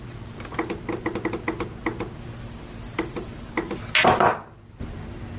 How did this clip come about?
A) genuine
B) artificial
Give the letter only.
A